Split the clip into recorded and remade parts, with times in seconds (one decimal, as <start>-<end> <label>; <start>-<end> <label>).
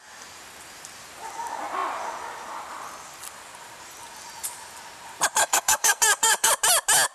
0.0-5.4 recorded; 5.4-6.5 remade; 6.5-7.1 recorded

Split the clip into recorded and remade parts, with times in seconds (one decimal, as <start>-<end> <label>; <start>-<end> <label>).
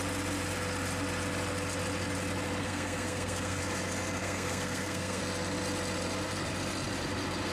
0.0-2.6 recorded; 2.6-3.6 remade; 3.6-4.2 recorded; 4.2-5.2 remade; 5.2-7.5 recorded